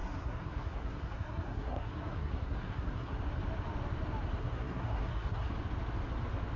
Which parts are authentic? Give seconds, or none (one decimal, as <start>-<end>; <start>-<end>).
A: 3.2-4.4; 5.5-6.6